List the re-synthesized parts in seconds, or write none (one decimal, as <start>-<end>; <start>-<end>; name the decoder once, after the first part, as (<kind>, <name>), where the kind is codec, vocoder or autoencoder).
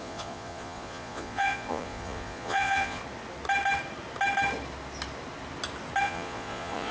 0.0-3.0 (vocoder, Vocos); 6.0-6.9